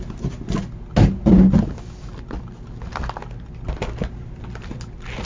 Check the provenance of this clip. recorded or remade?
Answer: recorded